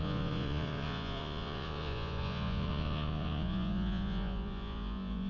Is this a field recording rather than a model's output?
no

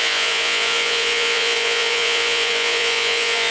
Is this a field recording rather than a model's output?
no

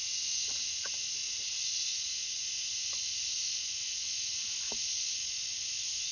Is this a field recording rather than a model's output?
yes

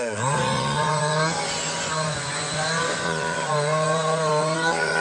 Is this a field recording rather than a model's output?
no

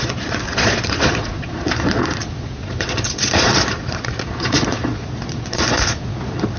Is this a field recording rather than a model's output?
no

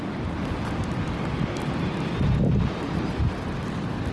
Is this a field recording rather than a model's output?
yes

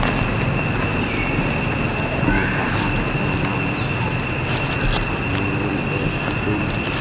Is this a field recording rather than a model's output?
yes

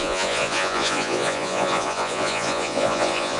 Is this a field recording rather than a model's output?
no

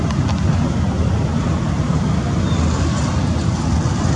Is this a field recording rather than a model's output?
yes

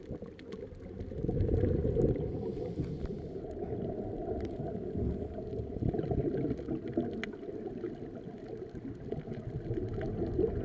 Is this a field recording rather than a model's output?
yes